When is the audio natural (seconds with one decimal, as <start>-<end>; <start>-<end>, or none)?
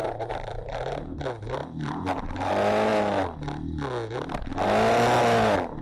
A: 1.2-1.6; 2.5-5.8